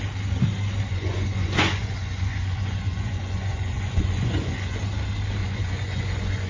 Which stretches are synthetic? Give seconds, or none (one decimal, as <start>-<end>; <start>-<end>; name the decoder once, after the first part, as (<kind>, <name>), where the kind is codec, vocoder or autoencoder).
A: 0.9-4.8 (vocoder, Vocos); 5.4-6.5